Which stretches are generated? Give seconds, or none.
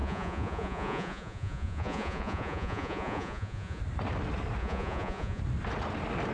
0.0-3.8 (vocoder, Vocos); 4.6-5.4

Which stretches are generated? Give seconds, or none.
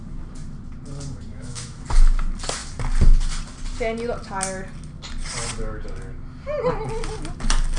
1.3-1.8 (autoencoder, DAC-VAE)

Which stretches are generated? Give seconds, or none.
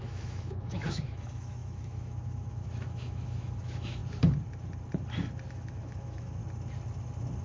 0.0-4.0 (autoencoder, DAC-VAE); 5.5-6.4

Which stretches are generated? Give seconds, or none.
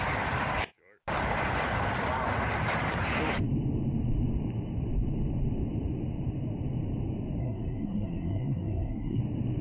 7.4-9.2 (codec, SNAC)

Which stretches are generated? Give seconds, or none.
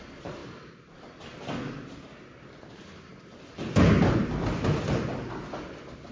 none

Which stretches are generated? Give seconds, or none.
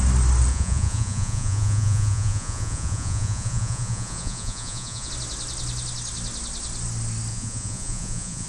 0.5-5.1 (vocoder, Vocos); 7.3-8.5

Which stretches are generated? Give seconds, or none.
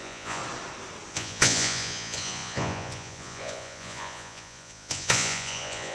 0.0-0.4 (vocoder, Vocos); 1.1-5.9